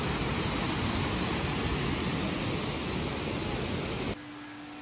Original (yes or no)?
yes